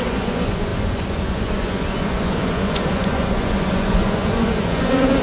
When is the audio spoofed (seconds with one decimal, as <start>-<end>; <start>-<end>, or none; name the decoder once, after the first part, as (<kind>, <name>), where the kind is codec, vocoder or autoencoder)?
0.0-5.2 (vocoder, Vocos)